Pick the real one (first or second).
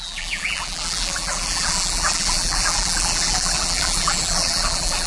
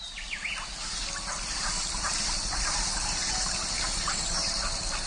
second